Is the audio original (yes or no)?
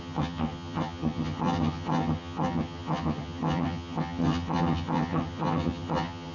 no